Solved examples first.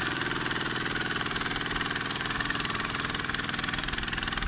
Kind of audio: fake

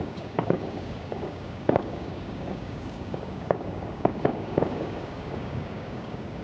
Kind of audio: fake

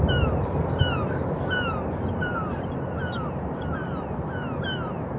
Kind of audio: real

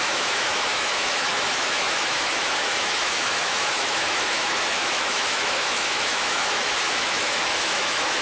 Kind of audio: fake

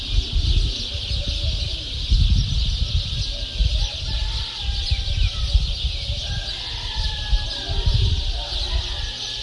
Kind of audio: real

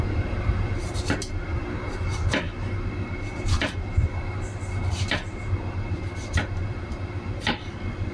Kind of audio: fake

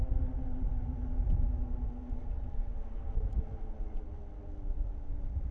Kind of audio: real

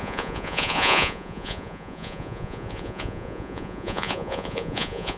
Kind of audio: fake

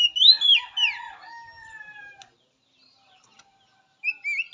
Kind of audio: real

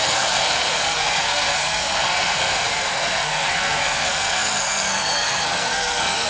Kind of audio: fake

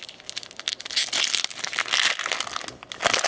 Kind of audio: real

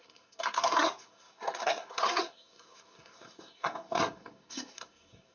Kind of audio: fake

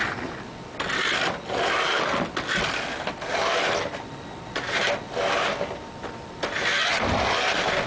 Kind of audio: real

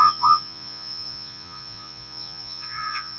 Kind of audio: fake